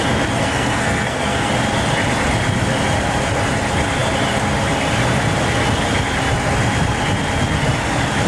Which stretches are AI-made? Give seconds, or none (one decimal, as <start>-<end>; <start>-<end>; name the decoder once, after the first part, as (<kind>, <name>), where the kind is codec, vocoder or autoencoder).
0.4-1.5 (codec, SNAC)